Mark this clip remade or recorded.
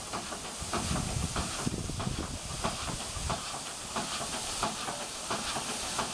remade